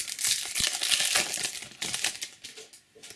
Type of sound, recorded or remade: recorded